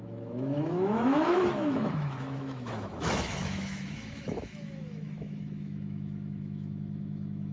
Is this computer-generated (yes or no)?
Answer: yes